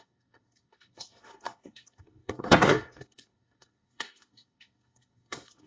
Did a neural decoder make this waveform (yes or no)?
yes